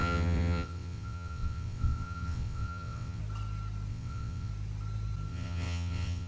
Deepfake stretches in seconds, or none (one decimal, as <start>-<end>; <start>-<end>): 0.0-3.2; 3.9-4.5; 5.3-6.3